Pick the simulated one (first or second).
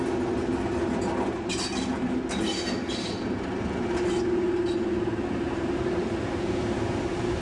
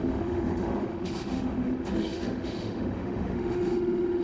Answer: second